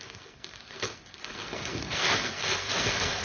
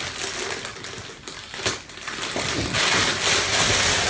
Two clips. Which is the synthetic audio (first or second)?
first